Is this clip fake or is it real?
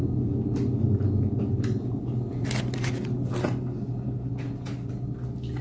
real